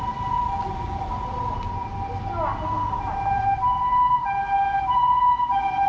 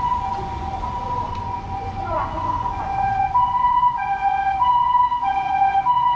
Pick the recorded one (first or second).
first